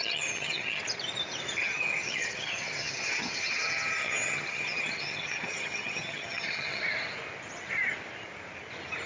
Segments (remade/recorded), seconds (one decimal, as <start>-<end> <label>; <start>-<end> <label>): 0.0-0.8 remade; 0.8-1.6 recorded; 1.6-6.8 remade; 6.8-9.1 recorded